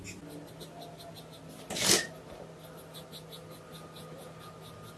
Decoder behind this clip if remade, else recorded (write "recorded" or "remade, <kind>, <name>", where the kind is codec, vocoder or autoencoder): recorded